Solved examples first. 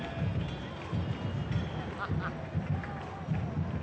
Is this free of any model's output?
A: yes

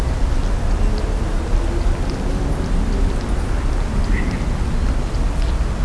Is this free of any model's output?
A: yes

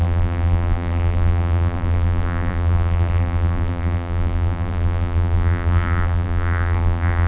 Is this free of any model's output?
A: no